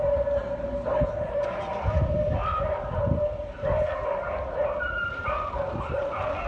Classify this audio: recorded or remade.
recorded